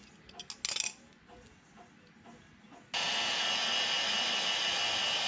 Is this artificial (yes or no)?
no